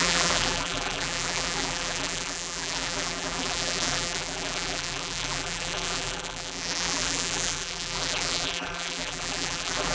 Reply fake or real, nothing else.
fake